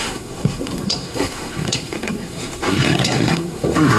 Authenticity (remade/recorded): remade